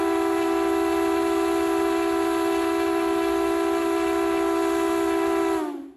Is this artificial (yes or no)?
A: no